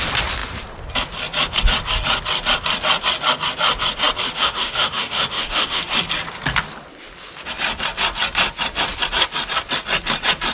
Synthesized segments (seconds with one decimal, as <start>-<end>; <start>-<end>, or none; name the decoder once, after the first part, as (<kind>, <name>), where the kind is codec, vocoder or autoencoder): 4.4-5.8 (autoencoder, DAC-VAE)